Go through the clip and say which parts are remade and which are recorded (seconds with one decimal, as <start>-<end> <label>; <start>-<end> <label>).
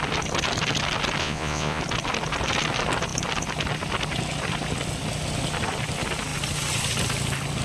0.0-1.2 recorded; 1.2-1.8 remade; 1.8-7.6 recorded